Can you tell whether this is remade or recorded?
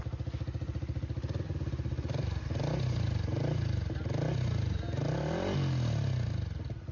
recorded